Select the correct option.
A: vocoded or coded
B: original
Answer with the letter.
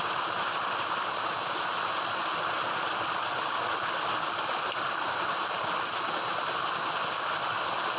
B